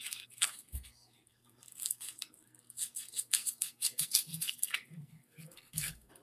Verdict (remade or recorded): remade